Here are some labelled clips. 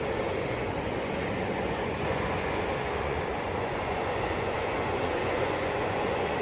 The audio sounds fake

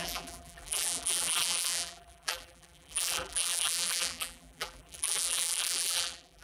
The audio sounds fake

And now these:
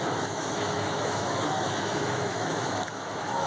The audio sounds fake